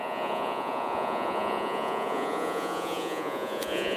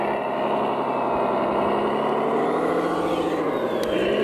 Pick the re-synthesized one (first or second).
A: first